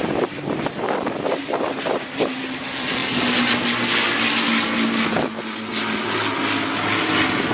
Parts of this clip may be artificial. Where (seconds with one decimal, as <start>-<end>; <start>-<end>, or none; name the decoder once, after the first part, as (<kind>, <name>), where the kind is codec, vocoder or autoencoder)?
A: 1.4-2.4 (vocoder, BigVGAN v2)